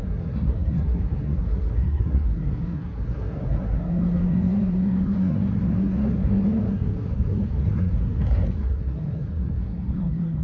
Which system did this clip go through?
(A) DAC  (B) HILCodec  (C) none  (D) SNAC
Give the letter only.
D